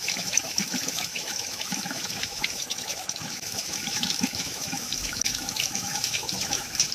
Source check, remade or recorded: remade